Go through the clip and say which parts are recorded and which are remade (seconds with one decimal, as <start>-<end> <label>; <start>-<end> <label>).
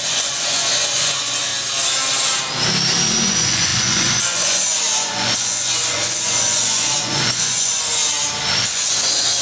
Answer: 0.0-1.5 remade; 1.5-3.3 recorded; 3.3-8.0 remade; 8.0-8.6 recorded; 8.6-9.4 remade